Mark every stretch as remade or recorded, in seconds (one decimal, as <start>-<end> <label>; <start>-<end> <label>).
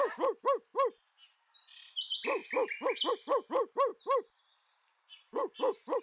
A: 0.0-3.9 recorded; 3.9-6.0 remade